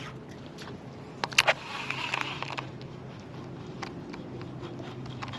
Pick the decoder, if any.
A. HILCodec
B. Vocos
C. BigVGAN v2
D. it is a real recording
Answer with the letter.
D